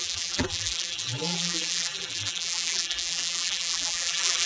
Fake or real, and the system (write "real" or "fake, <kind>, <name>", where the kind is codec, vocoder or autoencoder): fake, vocoder, BigVGAN v2